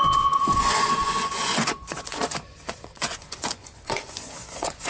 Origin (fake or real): fake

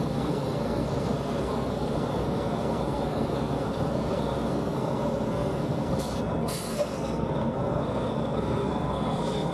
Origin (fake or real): fake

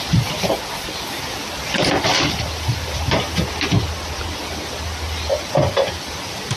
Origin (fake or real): real